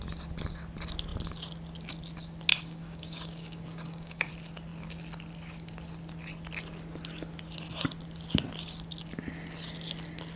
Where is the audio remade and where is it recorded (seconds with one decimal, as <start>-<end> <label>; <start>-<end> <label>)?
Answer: 0.0-2.5 recorded; 2.5-4.3 remade; 4.3-10.4 recorded